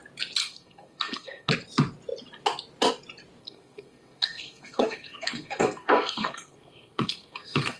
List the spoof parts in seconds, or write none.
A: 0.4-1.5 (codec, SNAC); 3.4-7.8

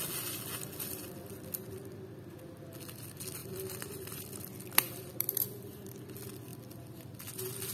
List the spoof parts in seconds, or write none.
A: 3.4-5.1 (vocoder, BigVGAN v2)

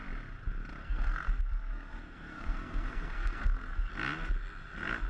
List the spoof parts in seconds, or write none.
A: 0.8-3.9 (codec, SNAC)